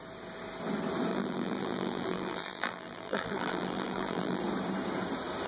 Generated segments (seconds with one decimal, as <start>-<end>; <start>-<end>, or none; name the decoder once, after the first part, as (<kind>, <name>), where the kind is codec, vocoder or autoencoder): 1.1-4.4 (vocoder, BigVGAN v2)

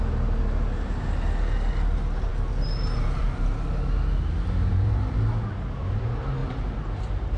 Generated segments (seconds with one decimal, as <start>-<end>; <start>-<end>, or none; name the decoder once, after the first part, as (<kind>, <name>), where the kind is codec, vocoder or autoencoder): 4.7-5.3 (vocoder, BigVGAN v2)

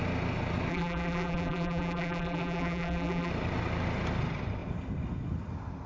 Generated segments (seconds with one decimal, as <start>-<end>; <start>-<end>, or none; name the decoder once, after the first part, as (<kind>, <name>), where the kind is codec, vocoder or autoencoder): 0.7-3.3 (vocoder, BigVGAN v2)